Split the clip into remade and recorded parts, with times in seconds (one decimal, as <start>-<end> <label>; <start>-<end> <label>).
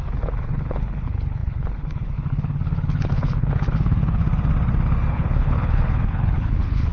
0.0-4.2 remade; 4.2-5.1 recorded; 5.1-6.9 remade